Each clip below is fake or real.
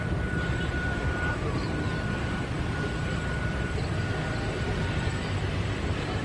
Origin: fake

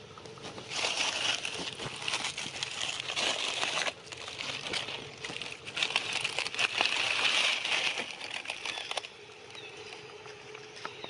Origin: real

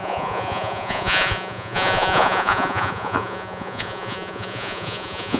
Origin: fake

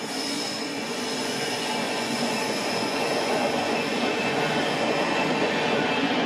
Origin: fake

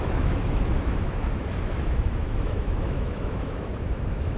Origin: fake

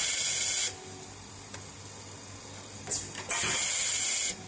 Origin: real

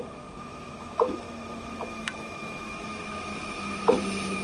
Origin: fake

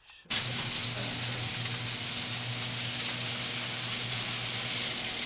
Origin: real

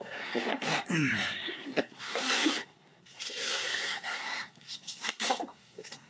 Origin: fake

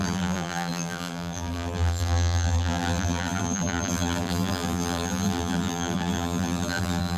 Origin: fake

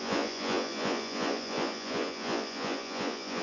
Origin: fake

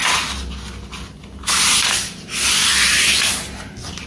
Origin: real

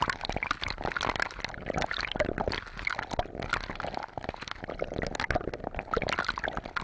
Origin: real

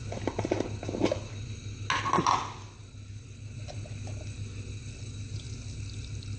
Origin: real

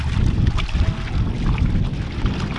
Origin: real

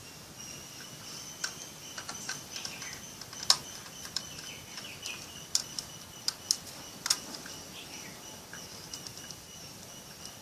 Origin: real